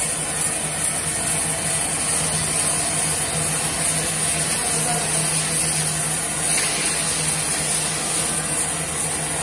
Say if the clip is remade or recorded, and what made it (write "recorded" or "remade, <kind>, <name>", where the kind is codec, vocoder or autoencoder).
recorded